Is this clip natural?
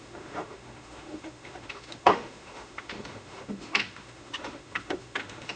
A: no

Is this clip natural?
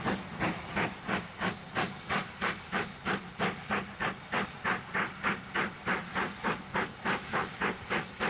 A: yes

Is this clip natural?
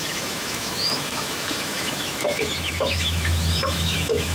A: no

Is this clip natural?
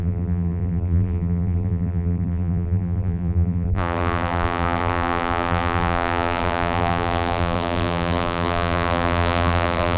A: no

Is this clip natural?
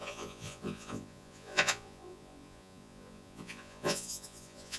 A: no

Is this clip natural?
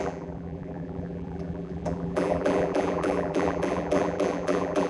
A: no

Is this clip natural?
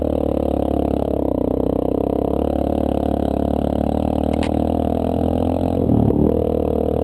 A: yes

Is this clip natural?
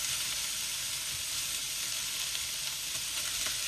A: yes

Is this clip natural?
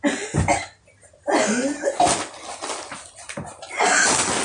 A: yes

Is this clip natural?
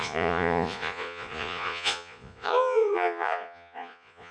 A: no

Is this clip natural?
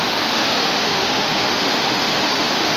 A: no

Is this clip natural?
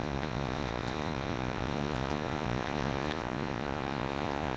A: no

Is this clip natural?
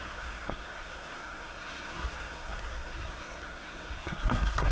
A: no